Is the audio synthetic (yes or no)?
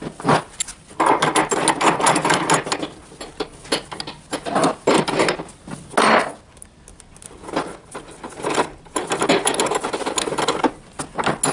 no